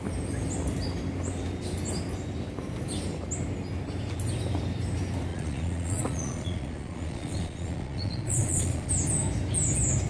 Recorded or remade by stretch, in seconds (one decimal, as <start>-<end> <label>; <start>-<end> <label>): 0.0-5.3 recorded; 5.3-8.9 remade; 8.9-10.1 recorded